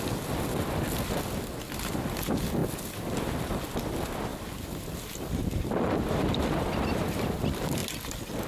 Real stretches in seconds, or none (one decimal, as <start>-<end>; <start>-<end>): 0.0-8.5